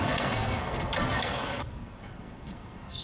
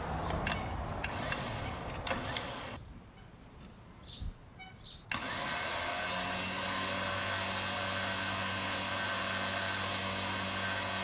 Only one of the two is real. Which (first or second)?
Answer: second